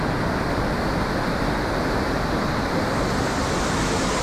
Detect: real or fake real